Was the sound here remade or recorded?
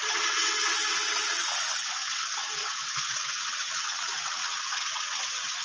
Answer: remade